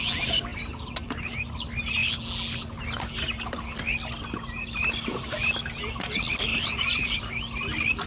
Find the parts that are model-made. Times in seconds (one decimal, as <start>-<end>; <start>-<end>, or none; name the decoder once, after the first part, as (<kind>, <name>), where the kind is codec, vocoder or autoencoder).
0.5-1.5 (vocoder, BigVGAN v2); 6.5-7.2